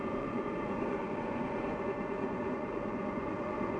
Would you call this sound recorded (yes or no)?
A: no